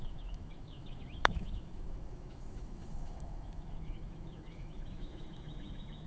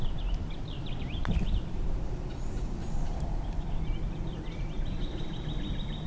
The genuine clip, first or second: second